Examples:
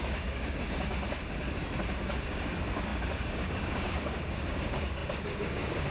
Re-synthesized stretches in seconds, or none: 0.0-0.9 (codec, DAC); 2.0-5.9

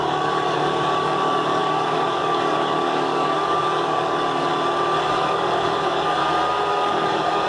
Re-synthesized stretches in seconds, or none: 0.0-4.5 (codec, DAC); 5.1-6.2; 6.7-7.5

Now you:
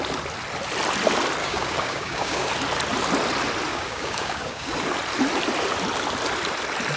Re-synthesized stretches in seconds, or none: 1.4-2.5 (codec, DAC); 3.7-4.7

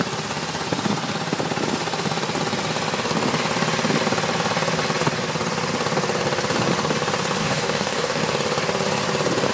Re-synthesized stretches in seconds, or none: 7.4-8.2 (codec, DAC)

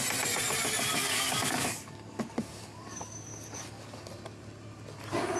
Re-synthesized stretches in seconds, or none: 0.9-4.1 (codec, DAC)

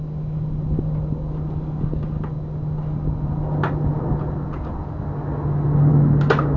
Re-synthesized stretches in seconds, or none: none